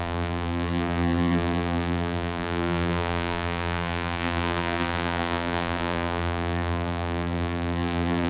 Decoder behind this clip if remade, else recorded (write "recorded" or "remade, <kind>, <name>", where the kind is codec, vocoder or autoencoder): remade, vocoder, BigVGAN v2